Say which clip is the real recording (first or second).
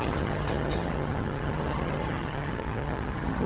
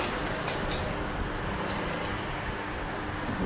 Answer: second